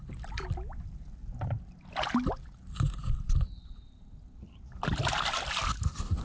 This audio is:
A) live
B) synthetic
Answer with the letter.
A